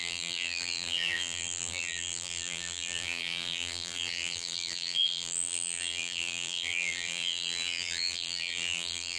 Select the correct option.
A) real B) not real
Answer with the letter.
B